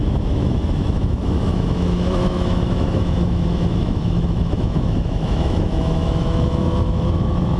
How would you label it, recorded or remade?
remade